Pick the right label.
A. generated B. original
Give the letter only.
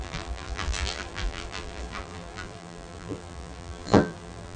A